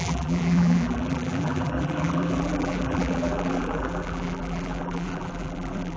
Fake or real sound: fake